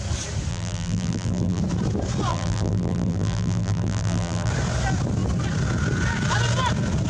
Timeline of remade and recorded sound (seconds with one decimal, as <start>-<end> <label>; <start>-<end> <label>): 0.0-0.5 recorded; 0.5-1.6 remade; 1.6-2.3 recorded; 2.3-4.5 remade; 4.5-7.1 recorded